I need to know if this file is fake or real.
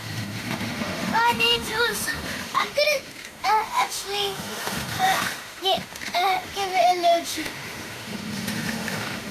fake